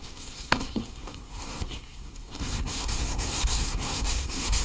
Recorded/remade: remade